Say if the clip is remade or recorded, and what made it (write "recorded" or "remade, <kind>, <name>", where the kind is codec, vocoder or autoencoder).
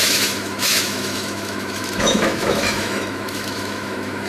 remade, autoencoder, DAC-VAE